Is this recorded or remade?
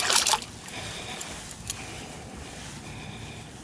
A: recorded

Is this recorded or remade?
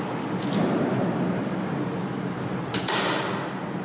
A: recorded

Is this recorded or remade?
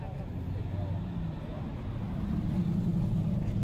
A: recorded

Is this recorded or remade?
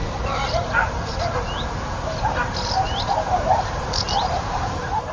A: remade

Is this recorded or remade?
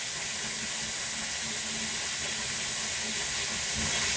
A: recorded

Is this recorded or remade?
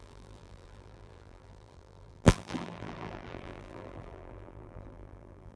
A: remade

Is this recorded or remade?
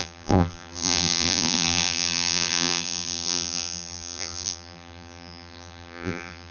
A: remade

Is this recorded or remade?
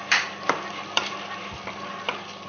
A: remade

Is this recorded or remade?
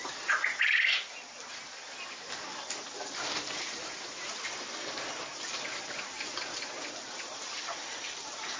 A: recorded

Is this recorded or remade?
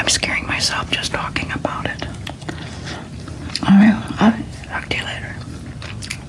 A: recorded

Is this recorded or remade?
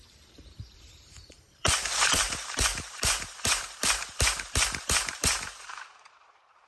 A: remade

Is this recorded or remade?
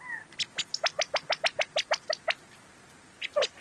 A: recorded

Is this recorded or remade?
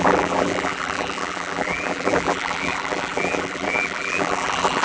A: remade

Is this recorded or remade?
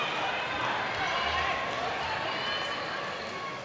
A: recorded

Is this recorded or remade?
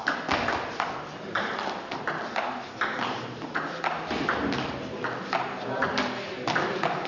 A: recorded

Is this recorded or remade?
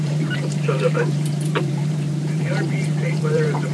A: remade